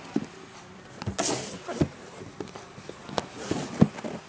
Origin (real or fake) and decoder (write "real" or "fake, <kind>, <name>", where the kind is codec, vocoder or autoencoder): real